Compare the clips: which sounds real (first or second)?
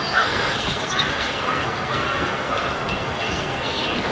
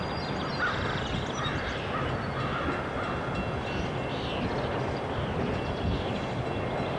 second